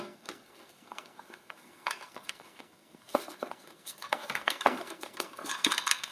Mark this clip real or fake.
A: fake